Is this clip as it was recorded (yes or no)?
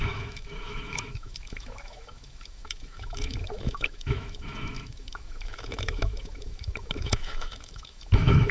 no